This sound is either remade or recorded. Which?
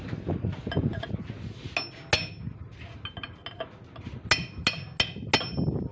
recorded